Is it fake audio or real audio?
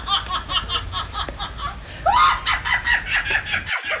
real